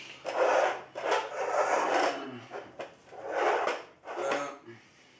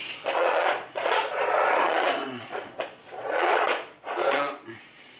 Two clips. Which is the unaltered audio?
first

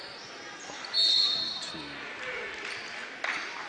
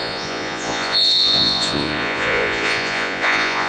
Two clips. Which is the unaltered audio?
first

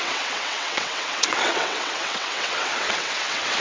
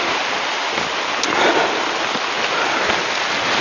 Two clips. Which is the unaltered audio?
second